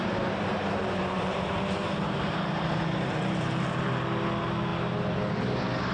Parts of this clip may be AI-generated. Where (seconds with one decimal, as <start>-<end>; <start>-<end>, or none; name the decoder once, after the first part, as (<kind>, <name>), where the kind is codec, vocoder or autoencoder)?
0.5-3.9 (vocoder, BigVGAN v2)